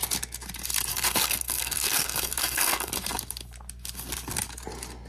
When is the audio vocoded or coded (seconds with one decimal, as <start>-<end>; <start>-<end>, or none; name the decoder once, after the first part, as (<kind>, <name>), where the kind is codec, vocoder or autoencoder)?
0.9-2.9 (codec, SNAC)